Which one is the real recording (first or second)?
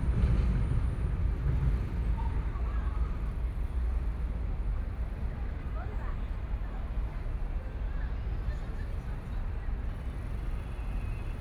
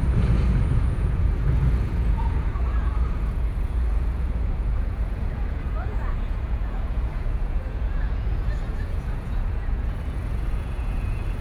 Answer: first